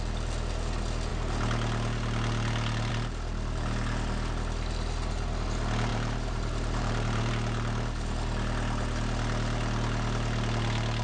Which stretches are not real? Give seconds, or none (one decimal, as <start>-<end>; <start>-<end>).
5.9-7.3